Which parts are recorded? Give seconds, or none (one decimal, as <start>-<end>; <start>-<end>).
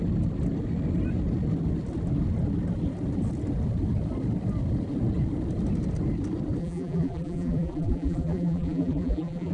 0.0-6.6